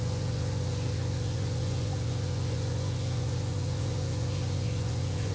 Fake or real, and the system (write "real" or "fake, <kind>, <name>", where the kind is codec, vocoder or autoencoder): fake, vocoder, Vocos